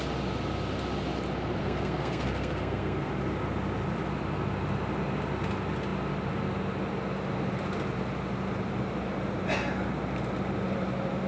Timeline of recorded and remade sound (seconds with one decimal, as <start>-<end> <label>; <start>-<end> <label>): 0.0-1.6 recorded; 1.6-3.1 remade; 3.1-11.3 recorded